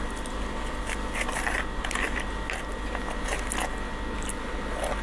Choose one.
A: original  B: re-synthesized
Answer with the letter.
A